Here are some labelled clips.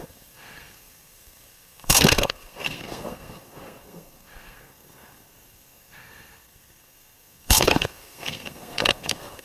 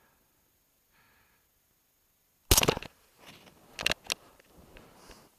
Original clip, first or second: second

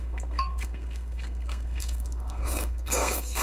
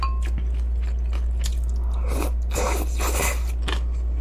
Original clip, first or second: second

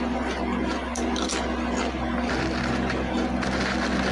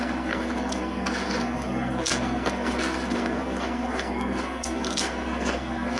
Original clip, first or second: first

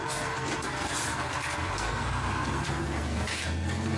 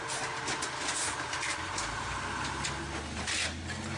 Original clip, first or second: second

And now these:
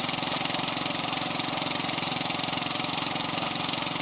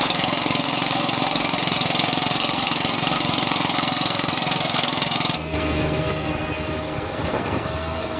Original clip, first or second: first